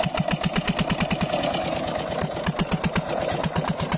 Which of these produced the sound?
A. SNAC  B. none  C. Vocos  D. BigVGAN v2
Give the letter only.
B